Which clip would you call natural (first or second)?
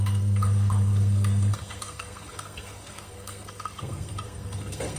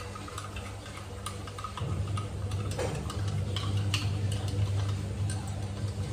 second